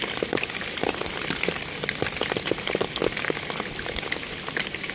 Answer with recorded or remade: recorded